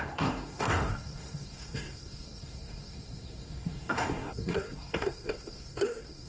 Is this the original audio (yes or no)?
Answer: no